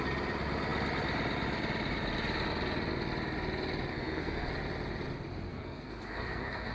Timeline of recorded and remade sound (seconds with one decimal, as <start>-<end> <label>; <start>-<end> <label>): 0.0-3.9 recorded; 3.9-4.5 remade; 4.5-5.5 recorded; 5.5-6.7 remade

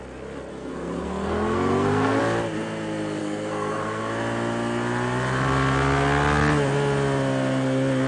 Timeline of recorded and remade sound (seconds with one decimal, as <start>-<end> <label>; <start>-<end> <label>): 0.0-0.5 recorded; 0.5-2.2 remade; 2.2-3.2 recorded; 3.2-4.0 remade; 4.0-8.1 recorded